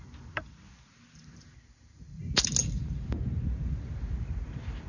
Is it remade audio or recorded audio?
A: recorded